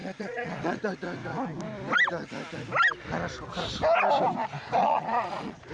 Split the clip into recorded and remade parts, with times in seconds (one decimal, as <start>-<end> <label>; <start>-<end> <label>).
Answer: 0.0-0.9 remade; 0.9-4.8 recorded; 4.8-5.7 remade